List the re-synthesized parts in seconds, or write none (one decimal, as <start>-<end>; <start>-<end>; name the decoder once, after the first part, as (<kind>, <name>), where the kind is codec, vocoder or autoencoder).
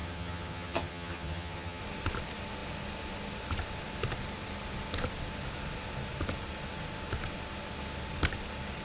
0.0-1.8 (vocoder, HiFi-GAN)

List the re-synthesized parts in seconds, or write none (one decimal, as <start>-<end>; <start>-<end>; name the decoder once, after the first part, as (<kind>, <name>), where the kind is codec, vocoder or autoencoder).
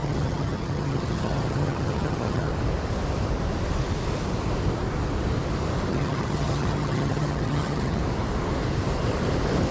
0.0-2.5 (vocoder, HiFi-GAN); 5.9-8.0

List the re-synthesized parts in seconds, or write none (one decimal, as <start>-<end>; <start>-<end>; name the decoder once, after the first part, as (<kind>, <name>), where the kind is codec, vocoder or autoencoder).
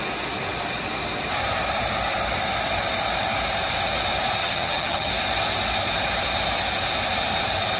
4.4-5.1 (vocoder, HiFi-GAN)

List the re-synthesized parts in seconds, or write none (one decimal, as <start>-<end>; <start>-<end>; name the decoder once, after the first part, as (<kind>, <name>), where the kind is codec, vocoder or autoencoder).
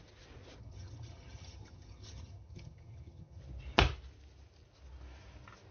0.6-3.4 (vocoder, HiFi-GAN)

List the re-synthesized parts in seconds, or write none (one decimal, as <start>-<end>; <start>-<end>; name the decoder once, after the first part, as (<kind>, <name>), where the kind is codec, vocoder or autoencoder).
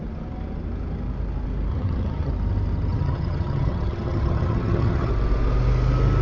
1.7-2.3 (vocoder, HiFi-GAN); 2.9-5.1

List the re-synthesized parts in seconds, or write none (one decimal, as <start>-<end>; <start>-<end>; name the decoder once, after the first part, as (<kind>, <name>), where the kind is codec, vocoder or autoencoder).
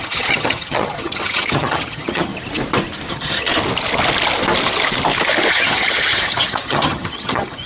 0.0-2.3 (vocoder, HiFi-GAN); 3.1-3.5; 5.5-7.7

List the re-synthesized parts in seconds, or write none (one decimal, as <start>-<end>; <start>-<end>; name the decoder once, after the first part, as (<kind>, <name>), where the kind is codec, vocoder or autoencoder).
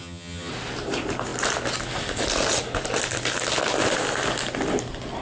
0.0-0.5 (vocoder, HiFi-GAN)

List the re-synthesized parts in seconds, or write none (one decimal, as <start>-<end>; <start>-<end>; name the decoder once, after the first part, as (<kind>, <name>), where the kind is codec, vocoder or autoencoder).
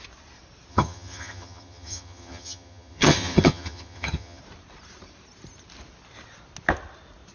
0.7-4.4 (vocoder, HiFi-GAN)